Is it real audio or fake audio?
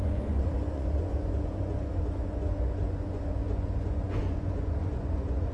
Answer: fake